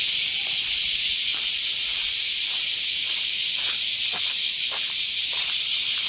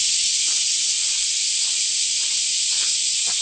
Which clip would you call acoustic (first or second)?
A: second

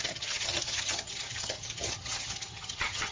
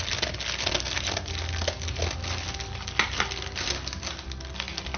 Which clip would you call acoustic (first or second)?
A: second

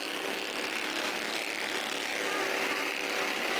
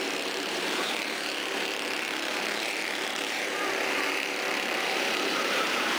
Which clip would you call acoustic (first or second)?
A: first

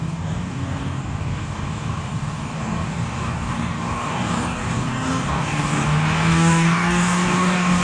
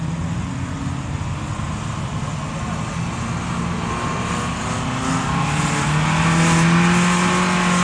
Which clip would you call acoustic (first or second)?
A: second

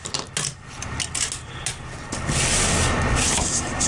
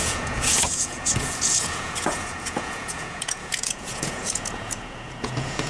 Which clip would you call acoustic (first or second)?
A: first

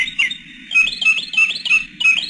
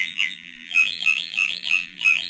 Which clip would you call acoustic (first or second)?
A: first